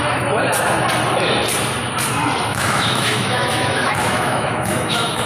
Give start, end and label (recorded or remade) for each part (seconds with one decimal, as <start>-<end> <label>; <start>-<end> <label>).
0.0-2.5 recorded; 2.5-5.3 remade